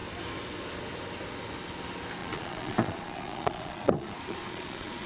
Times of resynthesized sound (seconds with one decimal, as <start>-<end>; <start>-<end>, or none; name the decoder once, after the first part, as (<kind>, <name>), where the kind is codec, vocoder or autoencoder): 2.2-5.1 (vocoder, Vocos)